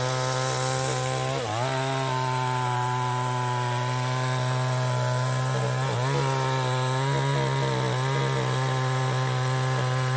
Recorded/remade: recorded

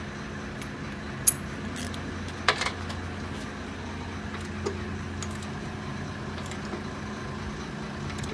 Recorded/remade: recorded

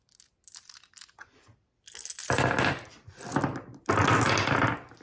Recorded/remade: recorded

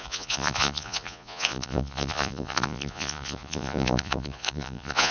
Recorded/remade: remade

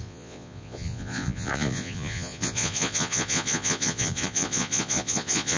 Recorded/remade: remade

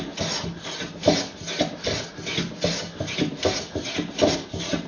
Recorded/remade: recorded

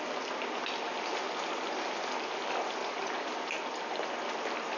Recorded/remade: recorded